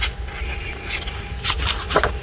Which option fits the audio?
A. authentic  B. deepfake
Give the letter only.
A